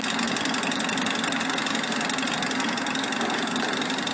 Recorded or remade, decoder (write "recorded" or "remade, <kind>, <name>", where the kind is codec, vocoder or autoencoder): recorded